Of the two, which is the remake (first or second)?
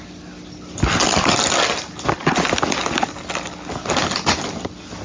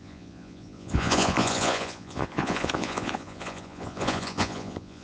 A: second